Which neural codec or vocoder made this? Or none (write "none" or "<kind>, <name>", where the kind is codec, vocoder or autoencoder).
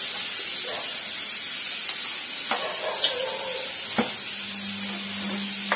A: none